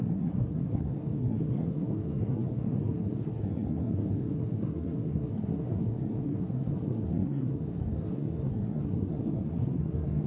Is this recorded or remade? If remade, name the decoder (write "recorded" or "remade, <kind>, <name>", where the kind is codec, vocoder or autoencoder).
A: remade, codec, SNAC